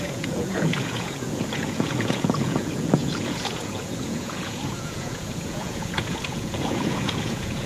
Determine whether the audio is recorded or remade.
remade